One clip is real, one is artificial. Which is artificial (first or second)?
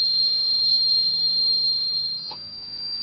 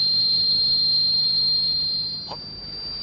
first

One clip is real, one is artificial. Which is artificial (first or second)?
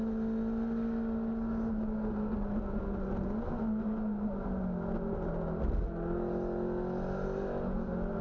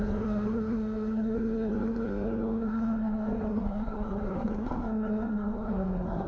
second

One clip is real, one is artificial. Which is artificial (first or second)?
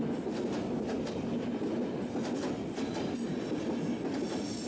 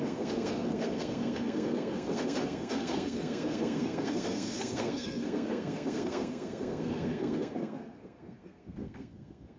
second